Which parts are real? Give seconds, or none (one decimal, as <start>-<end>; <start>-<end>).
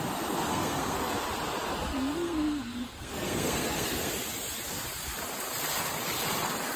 0.0-0.5; 1.1-1.9; 4.1-6.8